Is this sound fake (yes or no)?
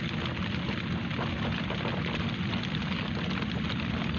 no